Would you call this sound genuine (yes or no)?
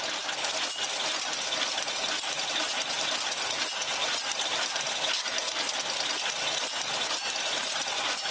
yes